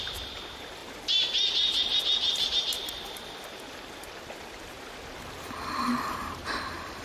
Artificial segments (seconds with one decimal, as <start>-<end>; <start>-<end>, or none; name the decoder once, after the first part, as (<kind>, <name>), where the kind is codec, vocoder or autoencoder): none